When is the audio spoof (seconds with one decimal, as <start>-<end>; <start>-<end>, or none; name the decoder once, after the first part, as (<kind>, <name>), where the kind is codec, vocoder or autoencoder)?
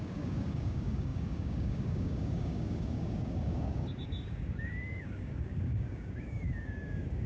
0.0-7.3 (codec, DAC)